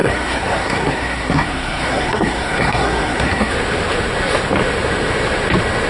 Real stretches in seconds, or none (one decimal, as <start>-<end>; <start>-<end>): 3.5-5.9